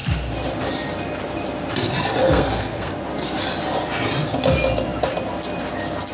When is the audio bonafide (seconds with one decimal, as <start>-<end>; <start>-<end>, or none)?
0.0-2.2; 2.9-6.1